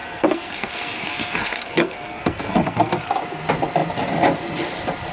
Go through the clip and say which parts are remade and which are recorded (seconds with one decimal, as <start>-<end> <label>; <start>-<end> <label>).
0.0-3.1 remade; 3.1-5.1 recorded